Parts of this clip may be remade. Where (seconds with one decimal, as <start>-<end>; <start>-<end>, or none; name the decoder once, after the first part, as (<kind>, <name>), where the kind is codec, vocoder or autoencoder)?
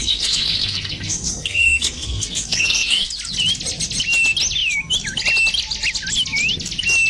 0.0-3.1 (codec, SNAC)